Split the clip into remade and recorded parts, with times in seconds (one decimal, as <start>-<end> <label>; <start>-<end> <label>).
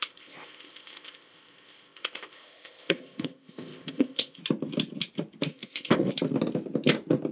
0.0-4.4 remade; 4.4-5.5 recorded; 5.5-6.1 remade; 6.1-7.3 recorded